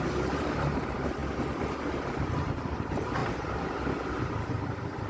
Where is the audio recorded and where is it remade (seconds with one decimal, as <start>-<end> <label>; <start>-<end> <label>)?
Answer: 0.0-5.1 remade